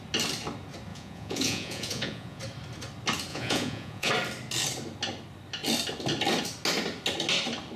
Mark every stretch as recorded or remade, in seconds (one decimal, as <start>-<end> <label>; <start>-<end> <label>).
0.0-0.9 recorded; 0.9-2.4 remade; 2.4-3.3 recorded; 3.3-4.1 remade; 4.1-7.8 recorded